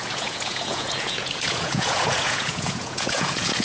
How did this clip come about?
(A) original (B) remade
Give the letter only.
B